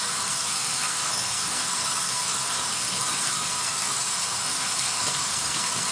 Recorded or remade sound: remade